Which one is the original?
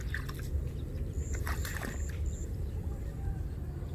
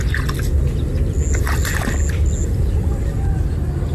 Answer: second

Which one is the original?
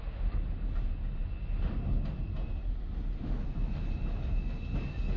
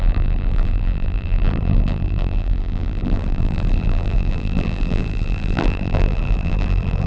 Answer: first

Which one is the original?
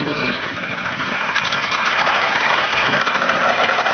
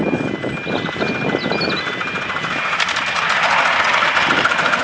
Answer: second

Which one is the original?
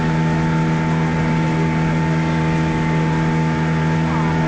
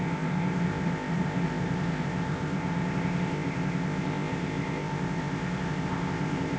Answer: first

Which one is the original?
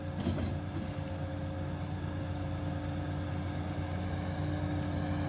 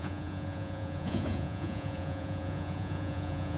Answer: first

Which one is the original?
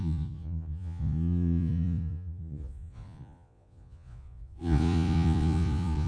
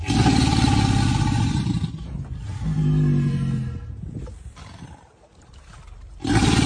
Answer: second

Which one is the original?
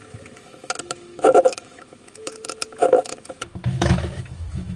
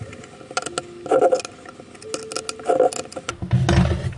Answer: second